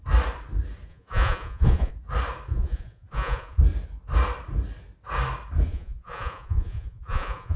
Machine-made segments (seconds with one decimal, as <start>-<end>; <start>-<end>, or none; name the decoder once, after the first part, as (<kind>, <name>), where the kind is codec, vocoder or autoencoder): 0.9-1.9 (vocoder, Vocos); 2.5-3.6; 5.7-7.6